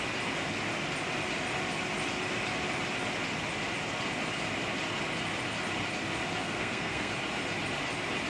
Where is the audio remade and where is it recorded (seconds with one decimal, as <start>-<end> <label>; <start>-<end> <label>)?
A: 0.0-6.4 recorded; 6.4-7.1 remade; 7.1-8.3 recorded